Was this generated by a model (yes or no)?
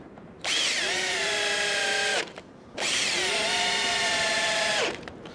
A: yes